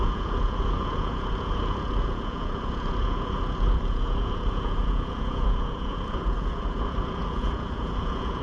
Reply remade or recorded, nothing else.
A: remade